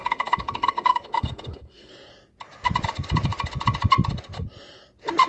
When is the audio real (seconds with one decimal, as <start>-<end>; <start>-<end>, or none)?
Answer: 1.9-5.3